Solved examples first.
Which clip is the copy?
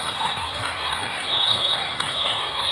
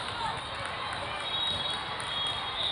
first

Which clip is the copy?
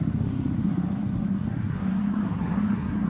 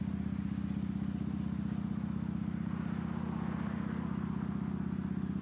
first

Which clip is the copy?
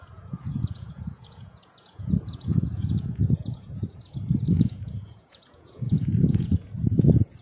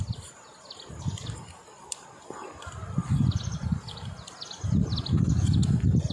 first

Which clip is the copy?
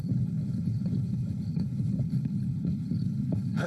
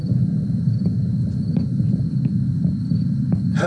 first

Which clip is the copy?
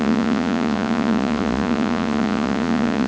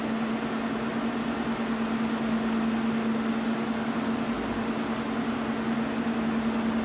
first